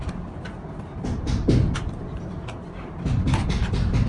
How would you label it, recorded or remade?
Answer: recorded